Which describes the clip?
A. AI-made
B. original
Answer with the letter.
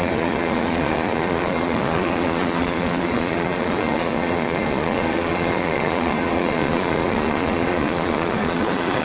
A